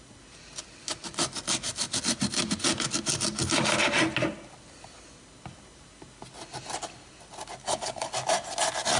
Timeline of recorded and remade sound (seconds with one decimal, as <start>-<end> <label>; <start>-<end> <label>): 0.0-7.6 recorded; 7.6-8.1 remade; 8.1-9.0 recorded